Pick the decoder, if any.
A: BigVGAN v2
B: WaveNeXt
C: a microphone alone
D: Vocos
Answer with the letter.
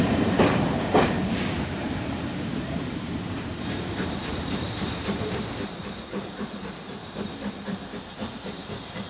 A